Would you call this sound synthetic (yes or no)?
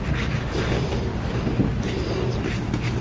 no